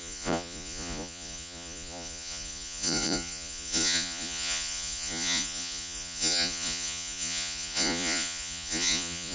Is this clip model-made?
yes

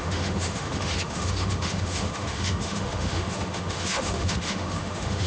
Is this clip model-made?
yes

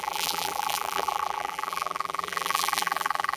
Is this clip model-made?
yes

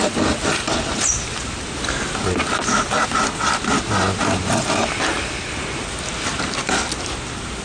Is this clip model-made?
no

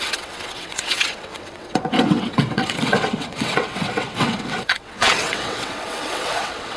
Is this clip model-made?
yes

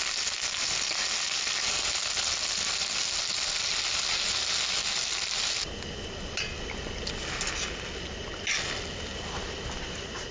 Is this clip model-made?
no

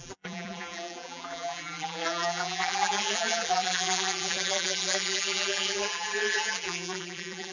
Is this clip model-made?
yes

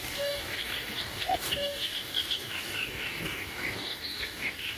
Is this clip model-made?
yes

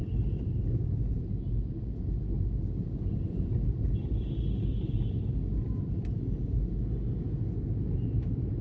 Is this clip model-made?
no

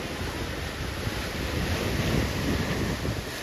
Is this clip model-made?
no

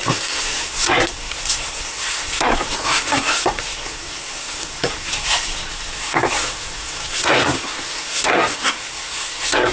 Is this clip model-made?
yes